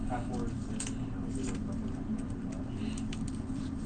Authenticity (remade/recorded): recorded